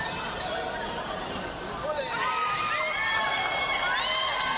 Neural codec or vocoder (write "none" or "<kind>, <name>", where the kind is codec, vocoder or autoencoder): none